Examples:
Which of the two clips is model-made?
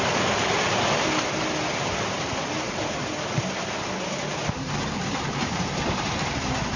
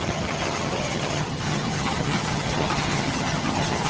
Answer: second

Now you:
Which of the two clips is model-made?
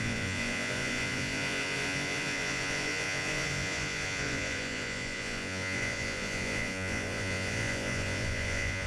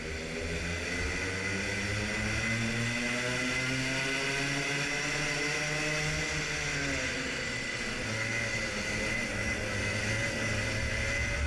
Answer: first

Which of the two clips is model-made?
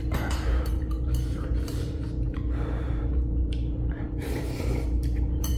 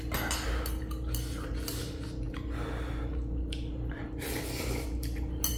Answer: first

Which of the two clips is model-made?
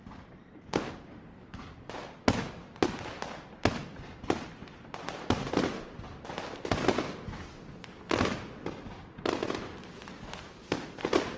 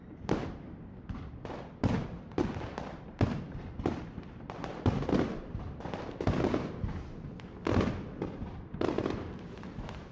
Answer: second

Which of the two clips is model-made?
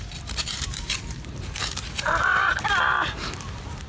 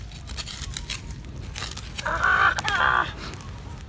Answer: first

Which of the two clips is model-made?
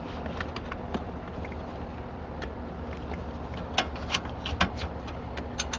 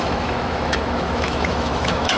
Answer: second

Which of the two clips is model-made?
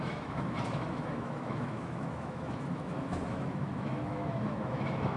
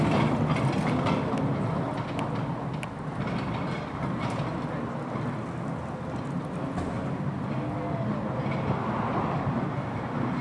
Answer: first